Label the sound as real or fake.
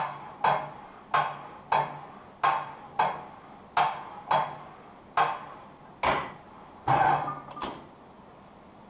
real